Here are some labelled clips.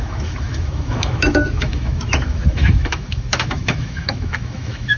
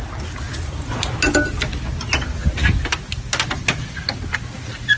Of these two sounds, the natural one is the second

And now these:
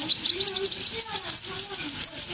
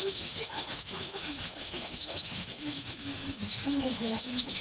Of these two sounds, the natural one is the first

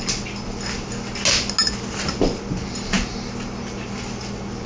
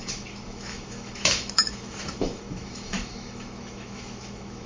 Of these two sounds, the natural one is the first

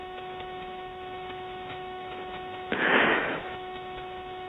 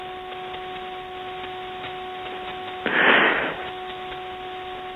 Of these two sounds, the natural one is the second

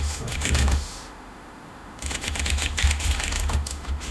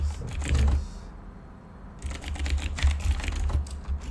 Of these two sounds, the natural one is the second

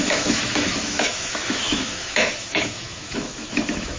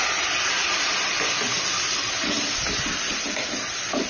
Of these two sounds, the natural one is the second